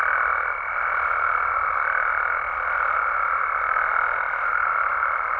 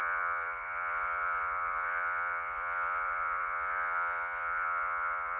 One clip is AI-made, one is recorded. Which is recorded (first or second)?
first